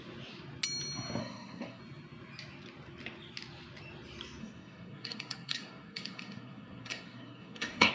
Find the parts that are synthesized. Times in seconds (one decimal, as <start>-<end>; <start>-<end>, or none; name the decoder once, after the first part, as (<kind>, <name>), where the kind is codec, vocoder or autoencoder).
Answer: 1.2-1.8 (codec, SNAC); 4.4-7.9